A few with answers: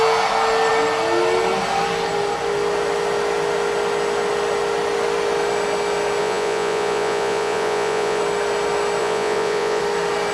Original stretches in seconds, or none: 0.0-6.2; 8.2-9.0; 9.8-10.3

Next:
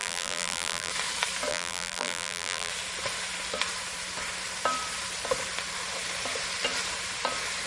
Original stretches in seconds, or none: 0.9-1.5; 2.7-7.7

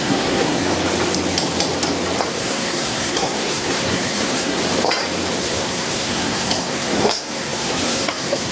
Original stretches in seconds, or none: 0.7-2.3; 4.6-5.4

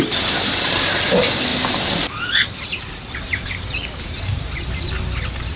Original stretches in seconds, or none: 0.0-1.5; 4.4-5.6

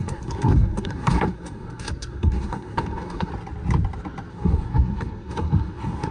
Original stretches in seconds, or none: 3.3-4.3

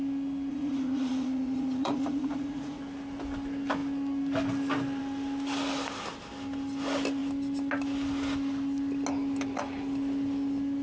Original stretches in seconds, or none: 0.0-0.5; 2.8-10.8